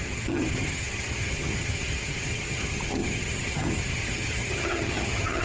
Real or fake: fake